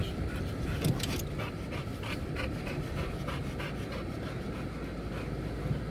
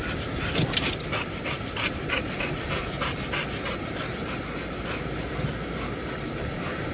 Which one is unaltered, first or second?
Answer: first